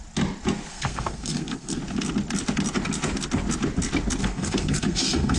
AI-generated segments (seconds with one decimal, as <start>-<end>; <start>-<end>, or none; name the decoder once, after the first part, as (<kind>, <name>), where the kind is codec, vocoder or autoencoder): 0.7-1.8 (codec, SNAC); 4.2-5.4

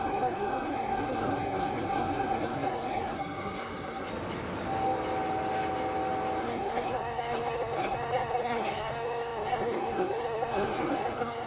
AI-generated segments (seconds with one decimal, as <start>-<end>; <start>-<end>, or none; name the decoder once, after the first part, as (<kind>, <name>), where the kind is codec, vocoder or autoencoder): 0.0-4.1 (codec, SNAC); 6.4-11.5

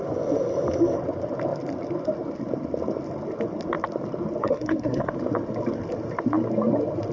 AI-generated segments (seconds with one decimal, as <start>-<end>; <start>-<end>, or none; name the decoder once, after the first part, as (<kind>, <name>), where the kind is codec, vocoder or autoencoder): 4.4-5.1 (codec, SNAC)